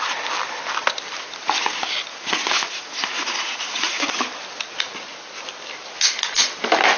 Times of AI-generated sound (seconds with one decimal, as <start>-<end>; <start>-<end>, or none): 2.1-4.2